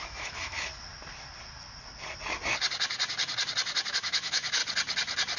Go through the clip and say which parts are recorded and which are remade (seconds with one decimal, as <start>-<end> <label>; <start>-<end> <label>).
0.0-0.7 remade; 0.7-3.9 recorded; 3.9-4.6 remade; 4.6-5.4 recorded